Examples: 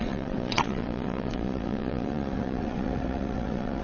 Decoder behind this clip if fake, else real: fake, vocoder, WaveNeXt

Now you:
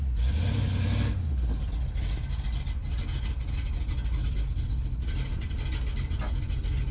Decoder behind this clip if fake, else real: real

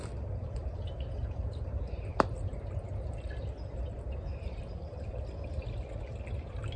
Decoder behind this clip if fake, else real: real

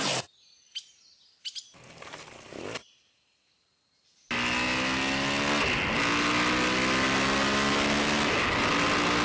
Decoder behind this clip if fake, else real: real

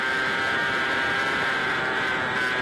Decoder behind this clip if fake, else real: real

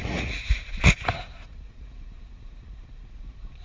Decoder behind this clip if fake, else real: fake, vocoder, Vocos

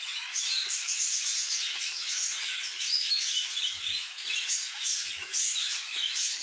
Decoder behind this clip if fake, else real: fake, autoencoder, DAC-VAE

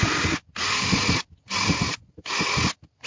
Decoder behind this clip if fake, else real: real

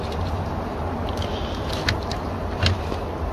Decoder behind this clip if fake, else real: real